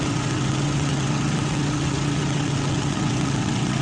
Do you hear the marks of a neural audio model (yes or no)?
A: yes